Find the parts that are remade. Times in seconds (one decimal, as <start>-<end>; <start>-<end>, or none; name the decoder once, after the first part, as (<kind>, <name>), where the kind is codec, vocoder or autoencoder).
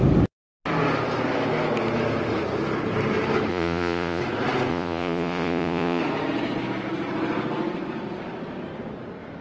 3.5-4.2 (vocoder, Vocos); 4.7-6.0